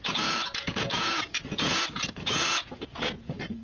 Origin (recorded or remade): remade